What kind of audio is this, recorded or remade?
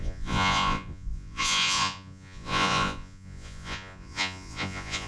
remade